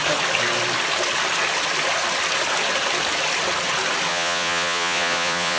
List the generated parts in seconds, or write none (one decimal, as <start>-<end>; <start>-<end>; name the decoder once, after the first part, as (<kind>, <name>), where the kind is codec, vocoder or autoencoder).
4.1-5.6 (vocoder, Vocos)